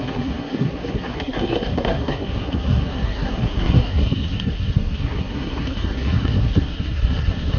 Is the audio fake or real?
fake